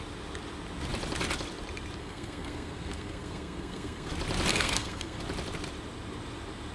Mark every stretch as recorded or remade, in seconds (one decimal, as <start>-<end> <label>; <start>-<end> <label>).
0.0-2.0 recorded; 2.0-4.1 remade; 4.1-4.5 recorded; 4.5-5.2 remade; 5.2-6.7 recorded